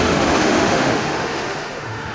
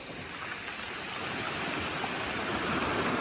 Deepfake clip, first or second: first